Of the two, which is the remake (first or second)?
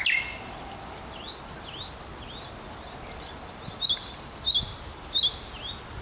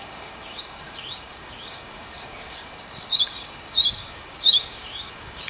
second